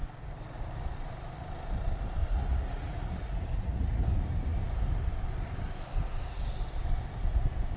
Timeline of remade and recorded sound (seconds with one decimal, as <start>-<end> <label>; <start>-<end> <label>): 0.0-2.2 recorded; 2.2-4.0 remade; 4.0-7.8 recorded